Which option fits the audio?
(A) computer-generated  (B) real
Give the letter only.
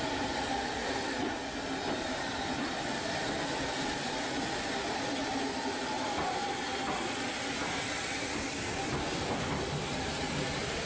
A